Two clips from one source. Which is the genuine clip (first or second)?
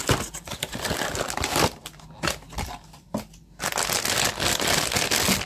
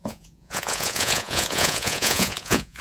first